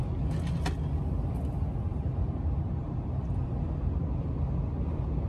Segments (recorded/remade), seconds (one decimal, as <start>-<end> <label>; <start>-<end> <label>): 0.0-1.9 recorded; 1.9-3.8 remade; 3.8-5.3 recorded